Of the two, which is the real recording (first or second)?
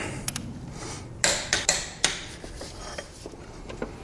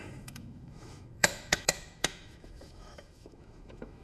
first